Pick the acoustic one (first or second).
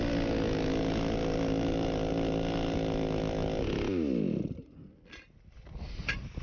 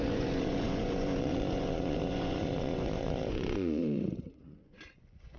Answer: first